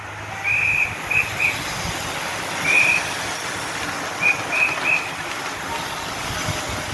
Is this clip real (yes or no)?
yes